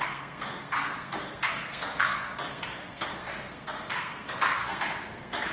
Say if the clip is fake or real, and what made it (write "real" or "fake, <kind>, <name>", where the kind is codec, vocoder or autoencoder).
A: fake, codec, SNAC